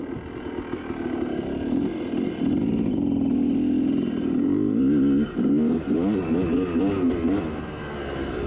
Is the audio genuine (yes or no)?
yes